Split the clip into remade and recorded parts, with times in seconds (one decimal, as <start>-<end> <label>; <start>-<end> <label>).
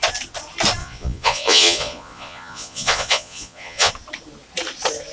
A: 0.0-0.8 recorded; 0.8-3.9 remade; 3.9-5.1 recorded